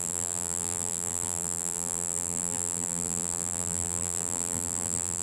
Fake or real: fake